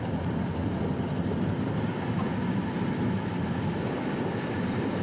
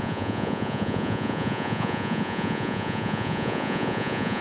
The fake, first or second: second